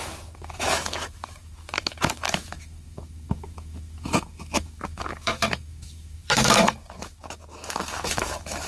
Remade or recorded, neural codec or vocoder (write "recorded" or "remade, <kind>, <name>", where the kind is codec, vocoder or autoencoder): remade, autoencoder, DAC-VAE